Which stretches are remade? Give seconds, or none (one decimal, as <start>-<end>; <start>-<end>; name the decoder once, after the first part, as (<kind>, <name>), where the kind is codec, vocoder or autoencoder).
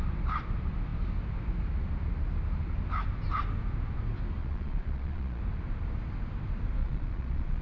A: 4.4-5.4 (vocoder, Vocos); 6.8-7.6